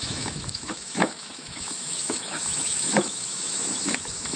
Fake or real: fake